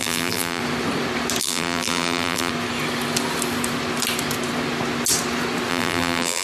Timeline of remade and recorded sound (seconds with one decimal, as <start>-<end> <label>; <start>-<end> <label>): 0.0-0.6 remade; 0.6-1.4 recorded; 1.4-2.5 remade; 2.5-5.7 recorded; 5.7-6.4 remade